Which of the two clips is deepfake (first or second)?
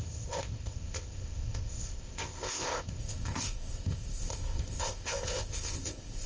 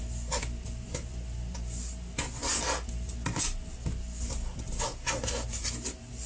first